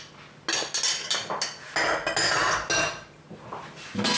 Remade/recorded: recorded